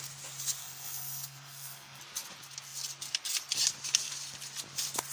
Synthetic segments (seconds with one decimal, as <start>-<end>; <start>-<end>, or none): 0.6-2.0